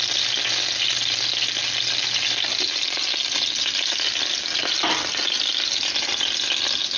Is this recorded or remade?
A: recorded